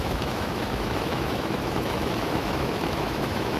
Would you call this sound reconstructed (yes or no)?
yes